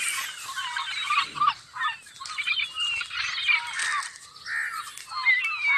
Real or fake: real